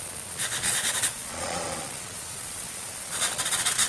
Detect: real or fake fake